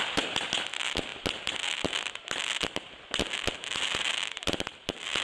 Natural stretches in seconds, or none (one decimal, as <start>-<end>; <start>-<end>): 0.0-5.2